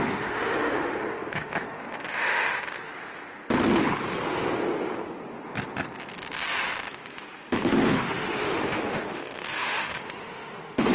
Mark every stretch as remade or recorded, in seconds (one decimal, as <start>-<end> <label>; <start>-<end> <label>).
0.0-2.9 remade; 2.9-7.7 recorded; 7.7-10.9 remade